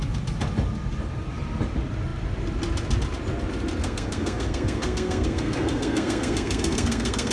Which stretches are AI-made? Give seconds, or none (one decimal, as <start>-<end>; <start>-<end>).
3.8-7.3